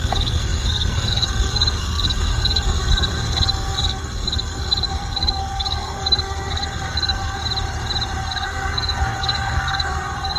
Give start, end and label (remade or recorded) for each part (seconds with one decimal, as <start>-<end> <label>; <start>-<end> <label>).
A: 0.0-7.4 remade; 7.4-8.2 recorded; 8.2-10.4 remade